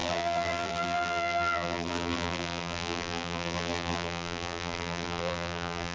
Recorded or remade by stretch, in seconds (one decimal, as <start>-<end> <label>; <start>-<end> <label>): 0.0-5.9 remade